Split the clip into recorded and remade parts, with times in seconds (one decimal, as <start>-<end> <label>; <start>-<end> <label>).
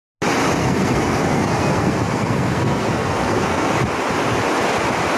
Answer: 0.0-0.6 recorded; 0.6-3.7 remade; 3.7-5.2 recorded